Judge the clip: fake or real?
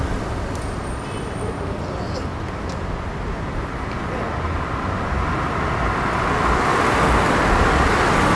real